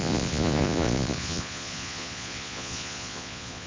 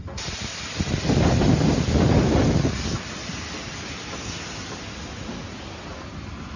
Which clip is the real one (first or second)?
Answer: second